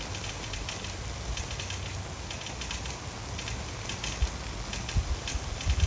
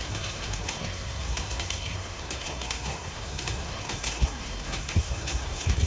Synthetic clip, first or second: second